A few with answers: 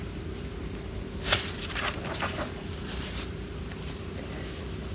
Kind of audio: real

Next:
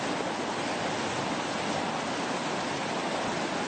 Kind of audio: real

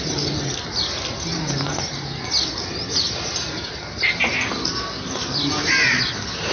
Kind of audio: real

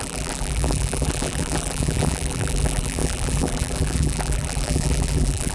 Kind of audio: fake